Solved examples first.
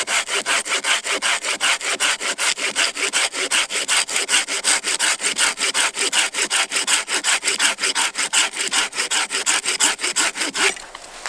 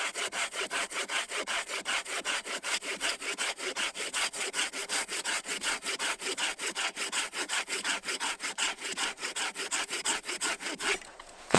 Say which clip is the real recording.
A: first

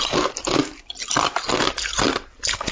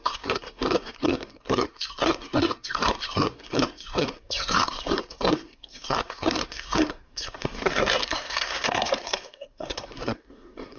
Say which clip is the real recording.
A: first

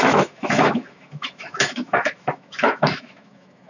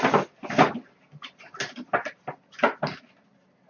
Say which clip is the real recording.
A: second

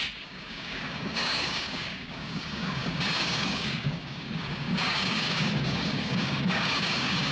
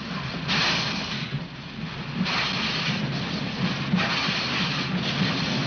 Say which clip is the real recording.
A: second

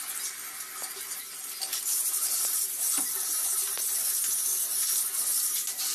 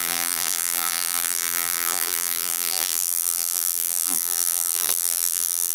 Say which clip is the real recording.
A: first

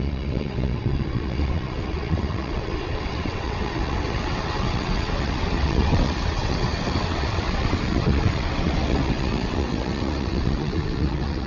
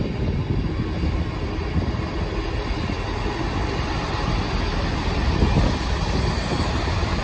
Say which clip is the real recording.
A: second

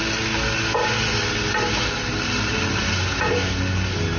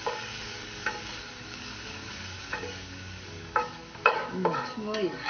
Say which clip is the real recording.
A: first